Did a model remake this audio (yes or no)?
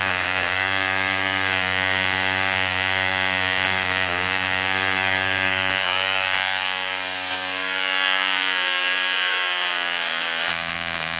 yes